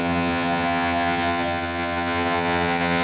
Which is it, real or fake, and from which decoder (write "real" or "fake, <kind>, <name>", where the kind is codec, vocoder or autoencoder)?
fake, vocoder, HiFi-GAN